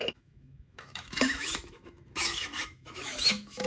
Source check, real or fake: fake